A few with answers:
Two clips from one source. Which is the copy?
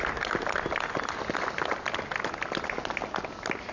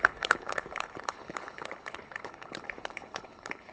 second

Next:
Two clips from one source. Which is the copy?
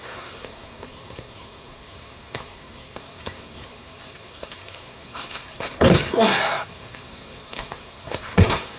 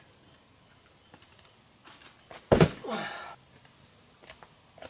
first